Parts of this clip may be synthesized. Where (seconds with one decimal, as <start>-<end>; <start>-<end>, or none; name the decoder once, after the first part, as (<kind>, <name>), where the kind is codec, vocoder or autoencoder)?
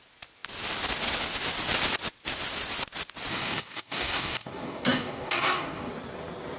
3.3-5.9 (codec, DAC)